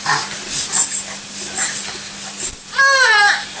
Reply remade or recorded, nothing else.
recorded